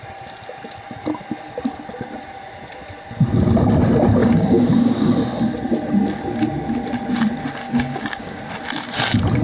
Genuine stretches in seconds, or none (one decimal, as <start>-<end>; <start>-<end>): 0.0-4.2; 5.1-7.6; 8.4-9.4